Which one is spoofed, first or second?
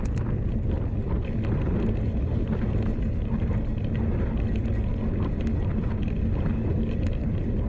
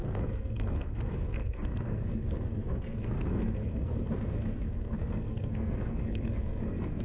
second